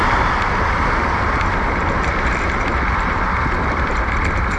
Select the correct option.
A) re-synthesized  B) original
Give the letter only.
B